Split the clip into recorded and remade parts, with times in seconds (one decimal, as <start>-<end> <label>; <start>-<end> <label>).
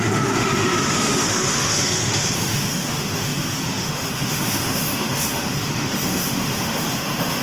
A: 0.0-7.4 remade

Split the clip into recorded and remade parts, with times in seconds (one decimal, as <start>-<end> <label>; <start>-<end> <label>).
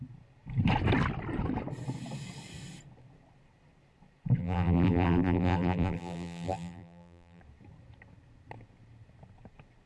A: 0.0-4.4 recorded; 4.4-7.4 remade; 7.4-9.9 recorded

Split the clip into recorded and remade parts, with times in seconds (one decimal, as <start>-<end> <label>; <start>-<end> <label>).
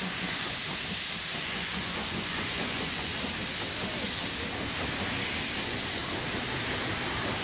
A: 0.0-0.6 remade; 0.6-1.4 recorded; 1.4-3.1 remade; 3.1-5.6 recorded; 5.6-6.0 remade; 6.0-7.4 recorded